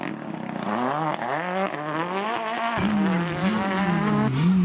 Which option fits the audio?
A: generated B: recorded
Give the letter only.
B